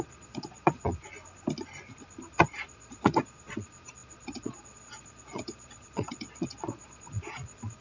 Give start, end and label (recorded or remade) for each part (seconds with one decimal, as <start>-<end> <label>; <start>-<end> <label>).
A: 0.0-1.0 remade; 1.0-2.3 recorded; 2.3-7.8 remade